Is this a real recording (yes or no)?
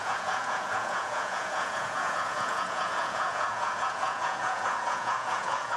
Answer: no